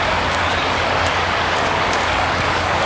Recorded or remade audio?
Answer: remade